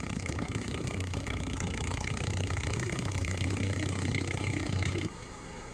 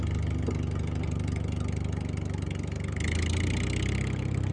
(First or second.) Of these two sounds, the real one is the second